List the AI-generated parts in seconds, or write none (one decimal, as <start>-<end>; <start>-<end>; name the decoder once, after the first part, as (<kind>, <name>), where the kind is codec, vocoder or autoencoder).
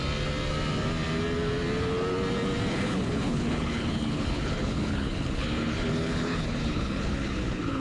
2.7-7.8 (codec, HILCodec)